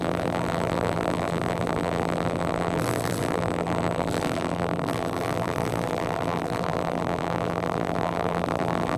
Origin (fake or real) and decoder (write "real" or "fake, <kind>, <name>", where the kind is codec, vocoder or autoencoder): fake, vocoder, BigVGAN v2